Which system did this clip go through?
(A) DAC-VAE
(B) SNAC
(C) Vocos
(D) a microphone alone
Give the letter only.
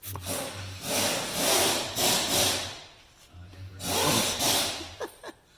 D